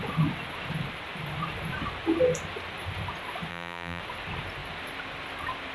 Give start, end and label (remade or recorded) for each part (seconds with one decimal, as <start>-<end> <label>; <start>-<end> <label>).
0.0-3.5 recorded; 3.5-4.0 remade; 4.0-5.7 recorded